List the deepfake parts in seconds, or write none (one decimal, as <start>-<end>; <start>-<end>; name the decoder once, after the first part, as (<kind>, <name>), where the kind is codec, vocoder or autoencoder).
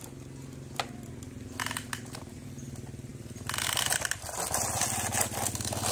none